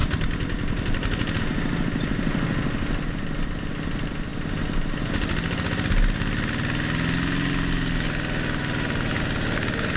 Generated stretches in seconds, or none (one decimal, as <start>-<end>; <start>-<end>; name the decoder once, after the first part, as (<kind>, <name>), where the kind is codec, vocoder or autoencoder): none